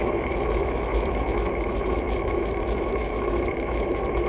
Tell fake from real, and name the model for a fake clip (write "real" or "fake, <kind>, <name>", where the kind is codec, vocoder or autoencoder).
fake, autoencoder, DAC-VAE